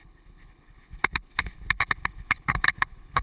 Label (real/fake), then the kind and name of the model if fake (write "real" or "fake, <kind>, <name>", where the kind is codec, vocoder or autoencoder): fake, codec, HILCodec